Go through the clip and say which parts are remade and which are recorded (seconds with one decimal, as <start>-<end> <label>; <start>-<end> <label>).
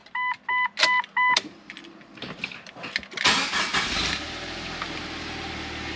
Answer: 0.0-6.0 recorded